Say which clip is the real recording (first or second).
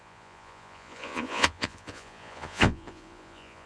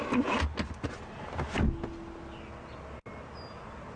second